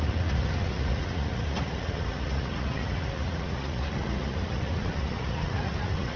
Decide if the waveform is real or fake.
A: fake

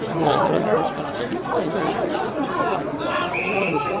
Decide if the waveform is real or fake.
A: fake